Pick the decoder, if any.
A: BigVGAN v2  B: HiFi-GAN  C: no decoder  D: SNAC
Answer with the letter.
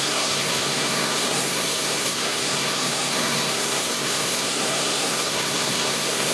D